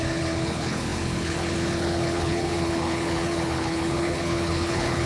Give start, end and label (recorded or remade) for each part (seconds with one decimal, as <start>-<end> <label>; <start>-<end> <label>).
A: 0.0-5.1 remade

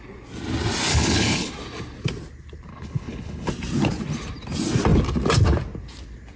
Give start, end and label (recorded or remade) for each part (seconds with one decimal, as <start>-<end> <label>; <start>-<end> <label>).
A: 0.0-0.9 recorded; 0.9-1.5 remade; 1.5-2.7 recorded; 2.7-3.5 remade; 3.5-6.4 recorded

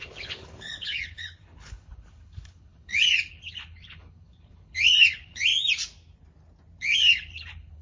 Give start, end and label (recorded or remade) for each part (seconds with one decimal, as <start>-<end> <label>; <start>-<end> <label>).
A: 0.0-5.5 remade; 5.5-6.8 recorded; 6.8-7.8 remade

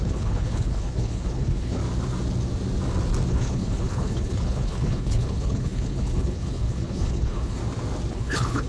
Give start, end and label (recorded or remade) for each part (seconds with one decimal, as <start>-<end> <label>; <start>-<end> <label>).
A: 0.0-1.8 remade; 1.8-3.3 recorded; 3.3-7.6 remade; 7.6-8.1 recorded; 8.1-8.7 remade

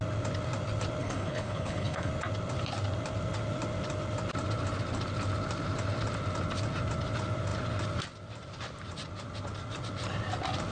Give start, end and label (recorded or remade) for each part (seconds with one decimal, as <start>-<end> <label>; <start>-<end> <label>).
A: 0.0-1.0 recorded; 1.0-2.1 remade; 2.1-10.7 recorded

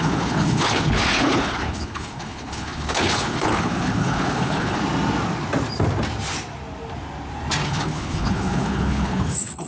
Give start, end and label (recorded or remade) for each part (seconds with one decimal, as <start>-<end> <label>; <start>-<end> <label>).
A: 0.0-4.8 remade; 4.8-7.7 recorded; 7.7-9.7 remade